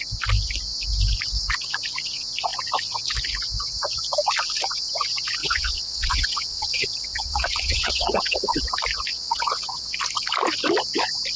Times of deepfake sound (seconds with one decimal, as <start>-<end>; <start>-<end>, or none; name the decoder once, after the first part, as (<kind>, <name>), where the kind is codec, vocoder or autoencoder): 5.4-8.7 (vocoder, WaveNeXt); 9.1-9.9

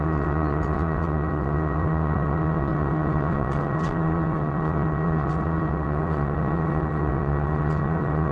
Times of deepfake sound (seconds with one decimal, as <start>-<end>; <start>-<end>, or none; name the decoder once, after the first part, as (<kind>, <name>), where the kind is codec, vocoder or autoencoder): 0.0-8.3 (vocoder, WaveNeXt)